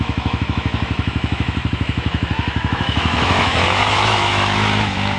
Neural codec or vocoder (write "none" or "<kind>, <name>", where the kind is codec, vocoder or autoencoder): autoencoder, DAC-VAE